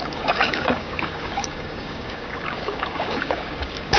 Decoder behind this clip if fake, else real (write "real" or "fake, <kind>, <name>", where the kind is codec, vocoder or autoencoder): fake, codec, DAC